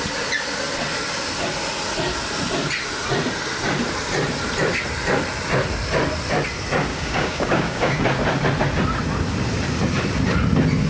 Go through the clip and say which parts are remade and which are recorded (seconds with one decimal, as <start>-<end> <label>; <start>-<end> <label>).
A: 0.0-6.9 recorded; 6.9-8.0 remade; 8.0-10.9 recorded